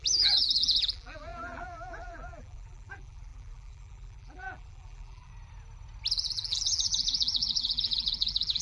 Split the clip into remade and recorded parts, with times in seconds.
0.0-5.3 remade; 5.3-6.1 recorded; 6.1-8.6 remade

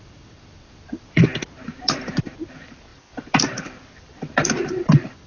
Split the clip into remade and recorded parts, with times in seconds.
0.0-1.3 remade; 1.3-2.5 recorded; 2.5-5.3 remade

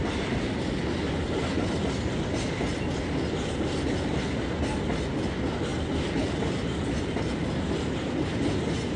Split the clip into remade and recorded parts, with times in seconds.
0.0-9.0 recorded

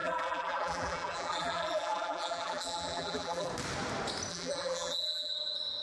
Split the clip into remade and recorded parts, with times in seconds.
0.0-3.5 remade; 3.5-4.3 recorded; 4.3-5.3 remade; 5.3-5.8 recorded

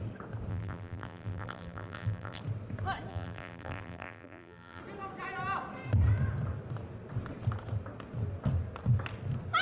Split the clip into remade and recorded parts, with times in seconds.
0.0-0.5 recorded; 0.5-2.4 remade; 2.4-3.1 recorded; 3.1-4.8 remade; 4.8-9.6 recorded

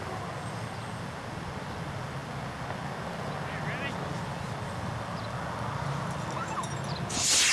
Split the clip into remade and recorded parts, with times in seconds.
0.0-7.5 recorded